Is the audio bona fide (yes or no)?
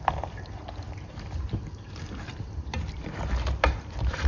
yes